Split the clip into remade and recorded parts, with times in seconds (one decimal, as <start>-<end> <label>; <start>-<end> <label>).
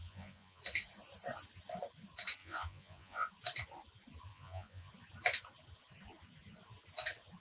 0.0-0.6 remade; 0.6-2.4 recorded; 2.4-3.3 remade; 3.3-4.3 recorded; 4.3-4.9 remade; 4.9-7.4 recorded